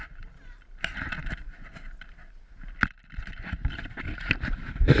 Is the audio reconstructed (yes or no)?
no